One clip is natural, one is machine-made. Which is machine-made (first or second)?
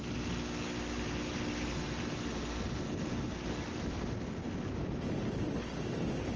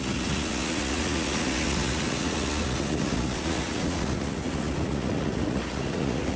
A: second